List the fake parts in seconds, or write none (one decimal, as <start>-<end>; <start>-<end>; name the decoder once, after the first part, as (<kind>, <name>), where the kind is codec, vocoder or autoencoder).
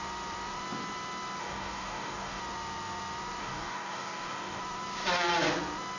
1.4-2.4 (codec, DAC); 3.4-4.6